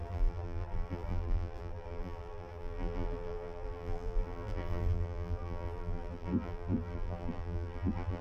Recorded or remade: remade